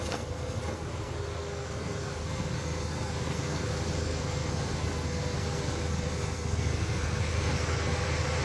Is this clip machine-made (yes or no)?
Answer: yes